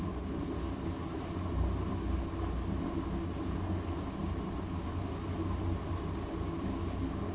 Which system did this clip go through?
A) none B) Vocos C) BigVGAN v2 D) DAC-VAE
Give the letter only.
A